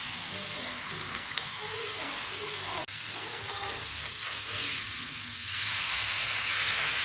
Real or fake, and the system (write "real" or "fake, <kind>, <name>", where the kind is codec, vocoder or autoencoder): fake, codec, SNAC